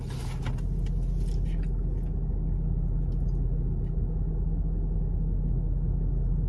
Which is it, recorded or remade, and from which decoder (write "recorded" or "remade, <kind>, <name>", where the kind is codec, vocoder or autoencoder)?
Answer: recorded